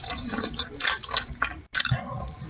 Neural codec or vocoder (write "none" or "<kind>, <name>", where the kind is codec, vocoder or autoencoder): none